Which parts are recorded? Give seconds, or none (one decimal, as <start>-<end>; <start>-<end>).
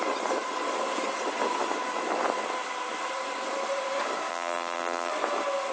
0.0-4.3; 5.1-5.7